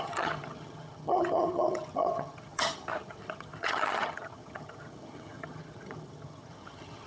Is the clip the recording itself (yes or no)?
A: no